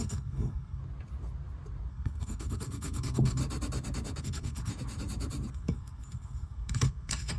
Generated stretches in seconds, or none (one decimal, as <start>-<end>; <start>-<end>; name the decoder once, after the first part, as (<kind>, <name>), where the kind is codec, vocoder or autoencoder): 0.0-0.8 (codec, SNAC); 1.9-3.4; 4.2-4.7; 5.5-7.4

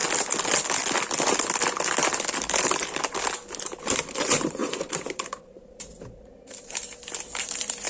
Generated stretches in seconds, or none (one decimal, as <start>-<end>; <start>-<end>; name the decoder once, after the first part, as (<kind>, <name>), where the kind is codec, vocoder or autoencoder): 3.6-7.9 (vocoder, BigVGAN v2)

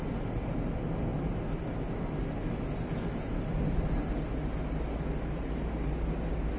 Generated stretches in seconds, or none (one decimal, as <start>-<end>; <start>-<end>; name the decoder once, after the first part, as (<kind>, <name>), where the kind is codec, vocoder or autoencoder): none

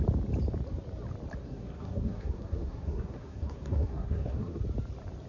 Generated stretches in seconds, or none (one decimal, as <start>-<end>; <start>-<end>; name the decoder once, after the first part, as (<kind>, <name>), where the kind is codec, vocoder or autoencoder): 1.4-4.6 (codec, SNAC)